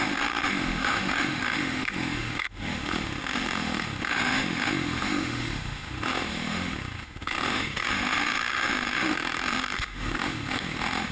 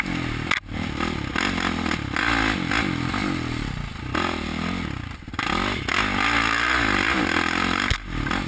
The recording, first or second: second